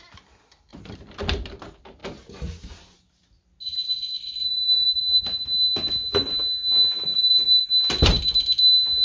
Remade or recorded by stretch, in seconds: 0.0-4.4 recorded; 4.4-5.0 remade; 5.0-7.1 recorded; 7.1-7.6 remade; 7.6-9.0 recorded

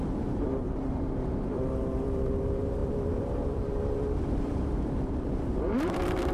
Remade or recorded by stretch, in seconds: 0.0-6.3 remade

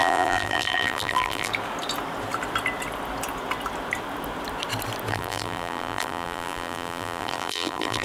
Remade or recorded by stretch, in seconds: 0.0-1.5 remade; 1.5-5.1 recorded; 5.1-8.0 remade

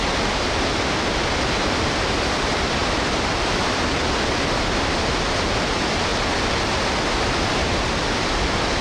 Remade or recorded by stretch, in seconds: 0.0-2.8 recorded; 2.8-3.7 remade; 3.7-8.8 recorded

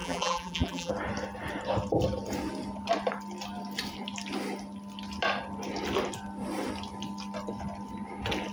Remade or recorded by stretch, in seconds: 0.0-0.9 remade; 0.9-8.5 recorded

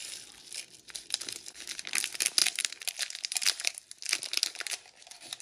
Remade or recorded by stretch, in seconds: 0.0-5.4 remade